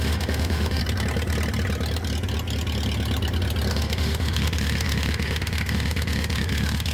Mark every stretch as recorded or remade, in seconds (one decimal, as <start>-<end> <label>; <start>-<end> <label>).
0.0-0.8 remade; 0.8-3.7 recorded; 3.7-6.9 remade